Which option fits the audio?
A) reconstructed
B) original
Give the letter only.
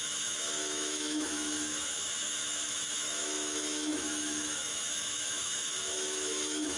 A